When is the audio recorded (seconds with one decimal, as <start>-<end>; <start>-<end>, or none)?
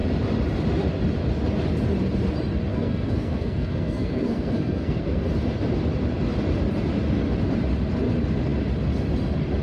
0.0-2.7; 5.2-9.6